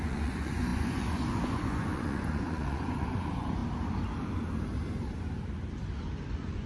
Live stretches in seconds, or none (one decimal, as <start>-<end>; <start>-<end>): 3.6-6.3